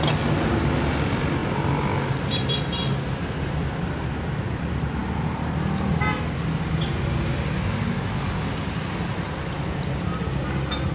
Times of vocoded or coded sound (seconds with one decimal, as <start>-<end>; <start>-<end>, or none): none